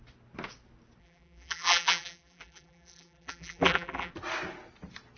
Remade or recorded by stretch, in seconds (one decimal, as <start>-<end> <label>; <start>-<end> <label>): 0.0-1.0 recorded; 1.0-4.1 remade; 4.1-5.2 recorded